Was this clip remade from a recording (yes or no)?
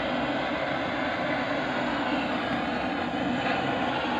no